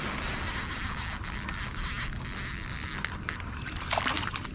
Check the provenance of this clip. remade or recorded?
recorded